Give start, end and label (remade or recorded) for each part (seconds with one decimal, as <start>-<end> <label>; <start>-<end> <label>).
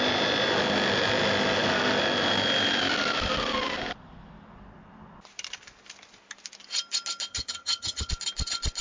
0.0-7.3 recorded; 7.3-8.1 remade; 8.1-8.8 recorded